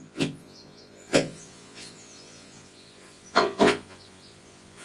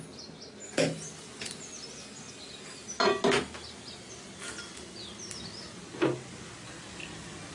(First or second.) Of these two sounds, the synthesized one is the first